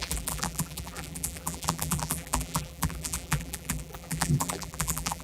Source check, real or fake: fake